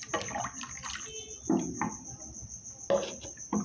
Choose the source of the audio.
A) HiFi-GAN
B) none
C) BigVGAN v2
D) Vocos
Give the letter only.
B